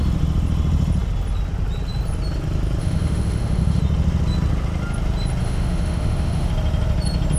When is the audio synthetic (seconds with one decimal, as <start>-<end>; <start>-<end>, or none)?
2.8-3.8; 5.4-6.5